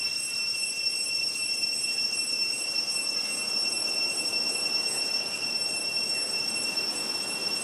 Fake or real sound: real